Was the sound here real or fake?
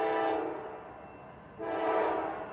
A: real